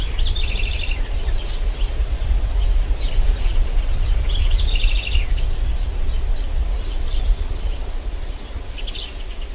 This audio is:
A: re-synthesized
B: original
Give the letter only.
B